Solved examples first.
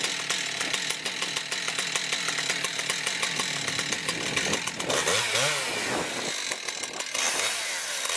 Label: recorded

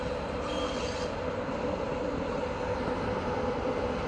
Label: remade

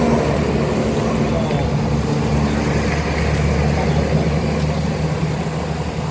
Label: recorded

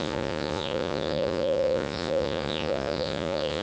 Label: remade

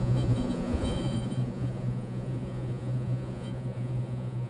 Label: remade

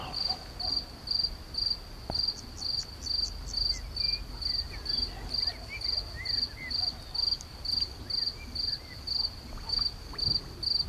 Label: recorded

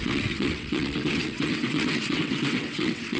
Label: remade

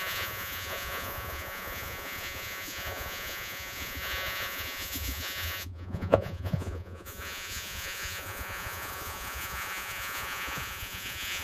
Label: remade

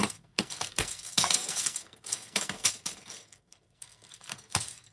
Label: remade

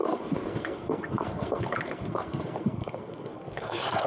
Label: remade